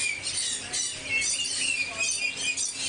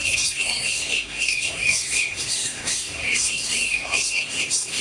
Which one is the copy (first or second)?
second